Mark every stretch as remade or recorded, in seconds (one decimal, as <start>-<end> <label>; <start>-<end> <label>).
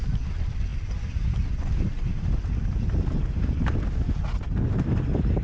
0.0-5.4 recorded